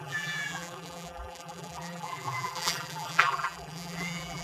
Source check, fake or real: fake